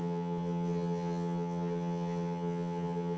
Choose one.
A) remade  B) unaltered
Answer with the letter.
A